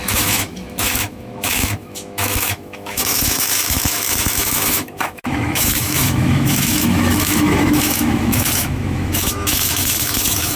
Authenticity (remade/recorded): remade